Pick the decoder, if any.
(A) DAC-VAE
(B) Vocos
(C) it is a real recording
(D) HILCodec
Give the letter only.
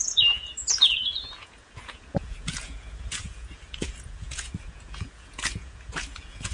B